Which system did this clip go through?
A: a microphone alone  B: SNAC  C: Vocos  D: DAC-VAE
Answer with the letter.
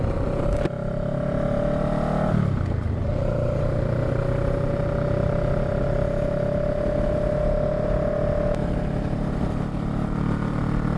A